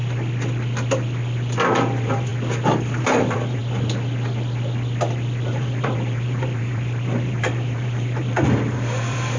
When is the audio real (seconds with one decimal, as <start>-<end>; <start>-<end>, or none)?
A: 0.0-1.7; 2.3-3.0; 3.6-5.5